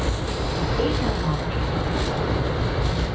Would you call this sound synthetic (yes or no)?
no